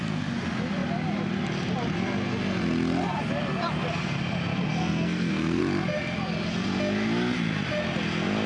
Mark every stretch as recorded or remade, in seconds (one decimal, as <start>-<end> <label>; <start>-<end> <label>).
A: 0.0-4.8 recorded; 4.8-5.6 remade; 5.6-8.5 recorded